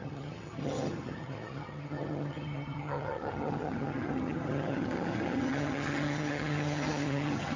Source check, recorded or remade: remade